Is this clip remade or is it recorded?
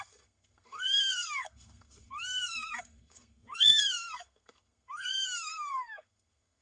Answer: remade